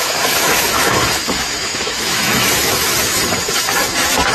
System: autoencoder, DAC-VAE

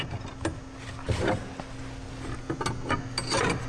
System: none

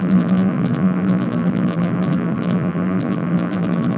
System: vocoder, BigVGAN v2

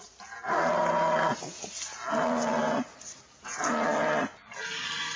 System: none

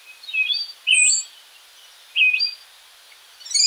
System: none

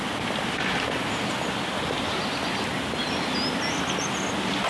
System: none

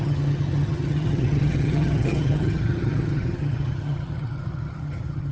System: vocoder, HiFi-GAN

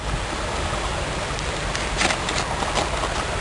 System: none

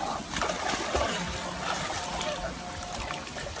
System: none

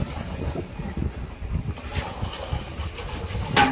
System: none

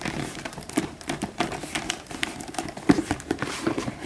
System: vocoder, BigVGAN v2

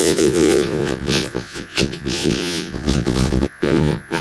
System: vocoder, Vocos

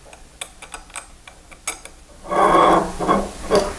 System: none